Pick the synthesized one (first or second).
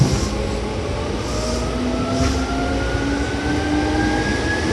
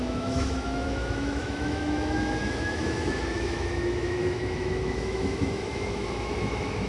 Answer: second